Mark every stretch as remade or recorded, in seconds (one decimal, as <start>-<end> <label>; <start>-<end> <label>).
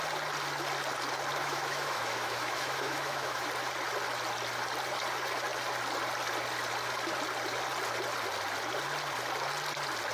0.0-1.4 recorded; 1.4-3.5 remade; 3.5-10.1 recorded